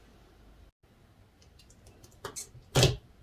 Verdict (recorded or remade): recorded